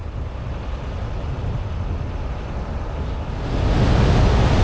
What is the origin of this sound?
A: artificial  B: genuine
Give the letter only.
B